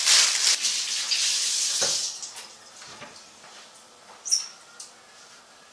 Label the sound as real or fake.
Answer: real